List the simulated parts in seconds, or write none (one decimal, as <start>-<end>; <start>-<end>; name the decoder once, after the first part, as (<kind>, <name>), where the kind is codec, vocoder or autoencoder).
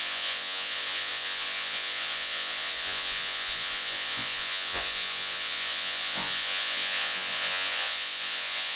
0.0-8.8 (vocoder, Vocos)